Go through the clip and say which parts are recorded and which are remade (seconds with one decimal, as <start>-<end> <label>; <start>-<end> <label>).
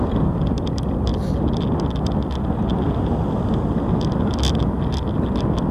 0.0-5.7 recorded